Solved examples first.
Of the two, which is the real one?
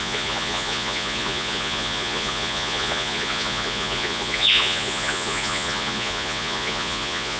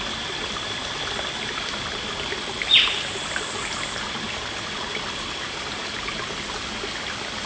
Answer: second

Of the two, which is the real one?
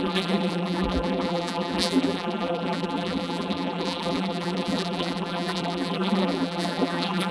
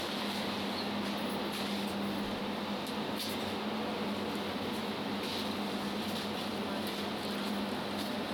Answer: second